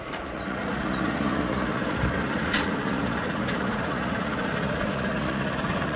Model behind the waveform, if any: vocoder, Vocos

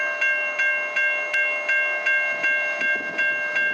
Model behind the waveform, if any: none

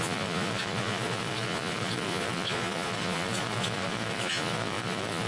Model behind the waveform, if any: vocoder, Vocos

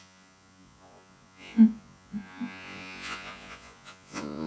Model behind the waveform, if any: vocoder, Vocos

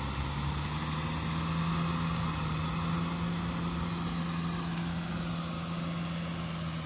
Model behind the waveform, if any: none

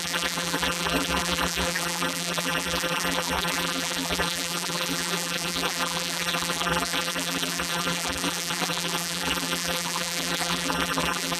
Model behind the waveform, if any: vocoder, BigVGAN v2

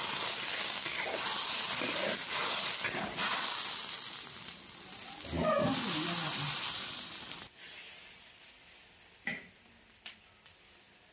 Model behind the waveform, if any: none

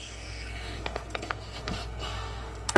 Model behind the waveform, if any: codec, SNAC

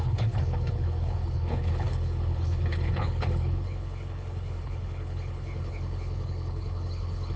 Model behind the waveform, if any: codec, HILCodec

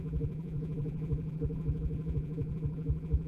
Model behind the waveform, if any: vocoder, BigVGAN v2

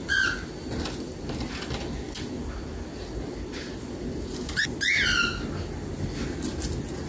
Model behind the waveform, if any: none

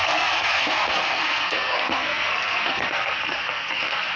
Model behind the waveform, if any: codec, SNAC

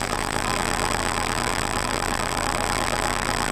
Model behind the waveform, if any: vocoder, BigVGAN v2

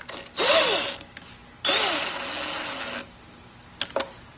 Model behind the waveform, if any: none